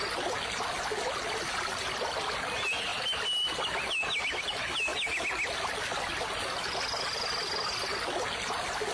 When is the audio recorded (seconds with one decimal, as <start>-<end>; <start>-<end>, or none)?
0.0-8.9